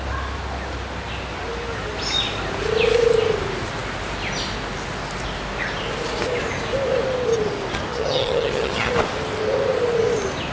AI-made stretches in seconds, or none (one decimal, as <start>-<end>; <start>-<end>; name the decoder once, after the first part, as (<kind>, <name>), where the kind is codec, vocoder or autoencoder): 7.9-8.9 (vocoder, HiFi-GAN)